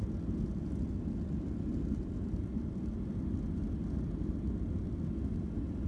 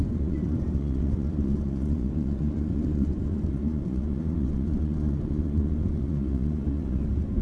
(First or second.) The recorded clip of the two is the first